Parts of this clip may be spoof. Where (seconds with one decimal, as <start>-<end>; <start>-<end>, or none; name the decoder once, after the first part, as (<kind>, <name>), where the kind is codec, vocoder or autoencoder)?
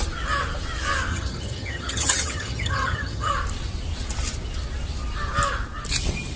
1.1-3.3 (vocoder, HiFi-GAN)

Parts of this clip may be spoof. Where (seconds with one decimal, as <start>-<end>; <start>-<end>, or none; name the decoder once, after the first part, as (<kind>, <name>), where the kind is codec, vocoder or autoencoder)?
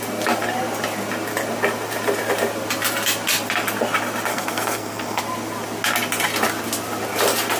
4.3-5.2 (codec, SNAC)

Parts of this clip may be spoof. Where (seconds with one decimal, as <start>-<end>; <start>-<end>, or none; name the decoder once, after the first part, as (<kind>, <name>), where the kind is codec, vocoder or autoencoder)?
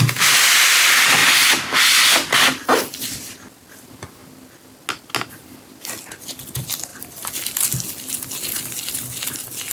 none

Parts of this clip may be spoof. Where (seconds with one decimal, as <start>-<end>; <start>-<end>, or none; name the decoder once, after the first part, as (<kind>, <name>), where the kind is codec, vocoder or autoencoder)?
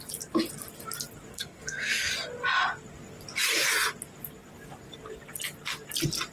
1.3-2.1 (codec, SNAC)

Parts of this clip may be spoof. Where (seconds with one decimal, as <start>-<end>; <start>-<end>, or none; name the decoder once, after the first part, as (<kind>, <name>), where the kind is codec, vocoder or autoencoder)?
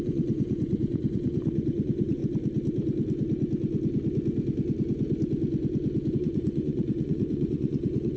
0.0-2.2 (vocoder, Vocos); 6.1-8.2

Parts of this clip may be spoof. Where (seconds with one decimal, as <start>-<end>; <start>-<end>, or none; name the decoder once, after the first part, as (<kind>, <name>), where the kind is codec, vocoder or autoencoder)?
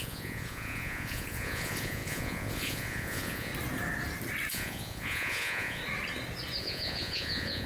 0.0-3.5 (vocoder, Vocos); 4.5-5.8; 6.6-7.7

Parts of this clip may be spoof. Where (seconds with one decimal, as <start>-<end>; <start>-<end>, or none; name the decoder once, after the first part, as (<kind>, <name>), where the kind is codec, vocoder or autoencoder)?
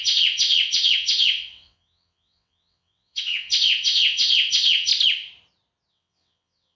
0.0-4.9 (vocoder, WaveNeXt); 5.9-6.8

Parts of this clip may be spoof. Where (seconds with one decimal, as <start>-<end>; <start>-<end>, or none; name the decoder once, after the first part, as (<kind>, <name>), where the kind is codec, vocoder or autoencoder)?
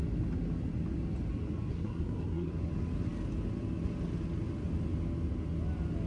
1.7-2.5 (codec, SNAC)